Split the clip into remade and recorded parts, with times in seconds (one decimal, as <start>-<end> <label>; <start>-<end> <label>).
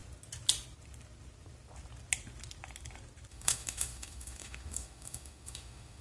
0.0-3.3 recorded; 3.3-6.0 remade